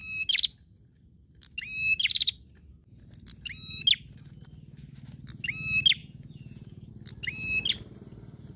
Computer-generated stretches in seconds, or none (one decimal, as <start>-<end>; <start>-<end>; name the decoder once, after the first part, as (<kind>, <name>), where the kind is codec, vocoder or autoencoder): 6.0-6.9 (vocoder, Vocos)

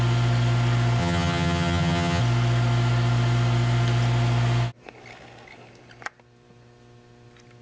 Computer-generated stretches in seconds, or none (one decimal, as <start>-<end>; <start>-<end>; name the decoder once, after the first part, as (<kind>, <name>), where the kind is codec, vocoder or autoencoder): 1.0-2.2 (vocoder, HiFi-GAN)

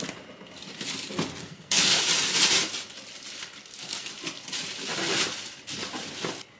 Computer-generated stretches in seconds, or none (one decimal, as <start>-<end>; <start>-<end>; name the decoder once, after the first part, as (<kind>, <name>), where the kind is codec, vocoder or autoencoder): 1.4-2.0 (codec, SNAC); 3.6-4.1

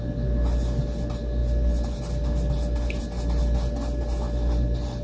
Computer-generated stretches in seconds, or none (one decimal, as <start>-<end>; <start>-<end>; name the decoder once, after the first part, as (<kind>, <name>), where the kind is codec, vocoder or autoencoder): none

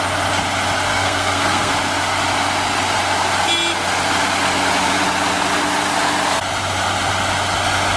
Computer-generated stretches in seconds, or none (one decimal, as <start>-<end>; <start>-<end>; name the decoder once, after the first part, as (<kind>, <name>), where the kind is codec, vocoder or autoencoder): 0.9-1.7 (codec, SNAC)